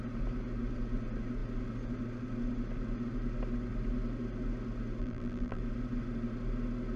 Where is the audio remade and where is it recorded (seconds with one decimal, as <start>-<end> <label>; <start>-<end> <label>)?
0.0-5.0 recorded; 5.0-5.6 remade; 5.6-7.0 recorded